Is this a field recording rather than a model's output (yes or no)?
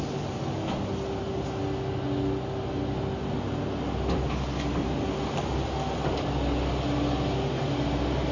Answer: yes